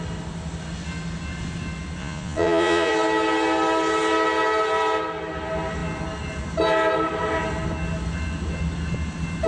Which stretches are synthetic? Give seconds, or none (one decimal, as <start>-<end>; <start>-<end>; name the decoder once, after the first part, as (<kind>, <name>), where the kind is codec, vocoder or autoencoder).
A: 2.0-2.9 (vocoder, Vocos)

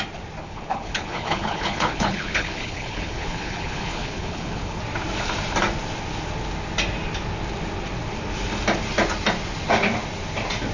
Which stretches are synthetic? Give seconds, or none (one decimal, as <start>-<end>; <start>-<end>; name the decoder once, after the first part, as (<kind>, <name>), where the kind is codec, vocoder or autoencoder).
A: 0.4-4.8 (codec, HILCodec)

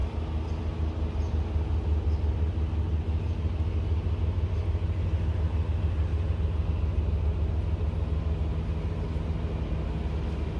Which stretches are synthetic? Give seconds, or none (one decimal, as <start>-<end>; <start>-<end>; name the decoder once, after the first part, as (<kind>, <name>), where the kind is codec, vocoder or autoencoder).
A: none

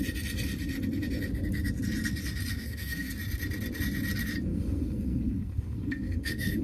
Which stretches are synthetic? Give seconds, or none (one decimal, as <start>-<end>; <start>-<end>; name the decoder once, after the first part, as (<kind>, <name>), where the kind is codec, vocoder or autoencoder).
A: 2.5-3.1 (codec, SNAC); 4.5-6.6

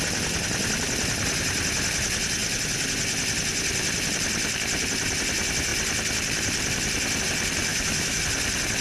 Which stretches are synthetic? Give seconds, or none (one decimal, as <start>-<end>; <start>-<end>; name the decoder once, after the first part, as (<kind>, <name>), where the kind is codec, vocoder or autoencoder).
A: 7.7-8.2 (autoencoder, DAC-VAE)

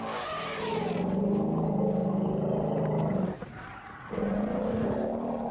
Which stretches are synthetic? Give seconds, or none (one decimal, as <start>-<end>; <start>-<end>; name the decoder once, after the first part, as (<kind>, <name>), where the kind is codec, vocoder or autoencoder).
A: 2.0-4.1 (vocoder, BigVGAN v2)

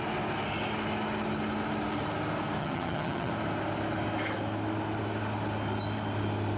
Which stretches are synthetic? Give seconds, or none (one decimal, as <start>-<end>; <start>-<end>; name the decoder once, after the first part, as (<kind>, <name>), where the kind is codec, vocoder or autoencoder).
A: 2.6-3.3 (vocoder, HiFi-GAN)

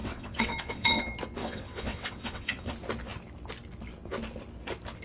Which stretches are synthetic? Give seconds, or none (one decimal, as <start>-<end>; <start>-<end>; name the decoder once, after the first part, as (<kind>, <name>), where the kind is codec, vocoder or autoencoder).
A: 0.0-1.0 (vocoder, WaveNeXt); 1.4-2.7